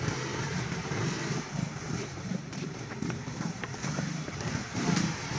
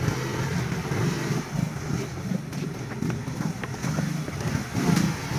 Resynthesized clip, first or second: first